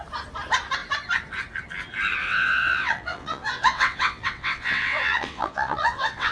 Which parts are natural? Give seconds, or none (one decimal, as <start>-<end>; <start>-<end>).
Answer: 0.0-2.2